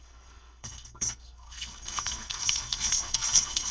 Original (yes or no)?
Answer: no